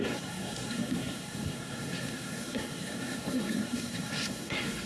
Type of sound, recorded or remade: remade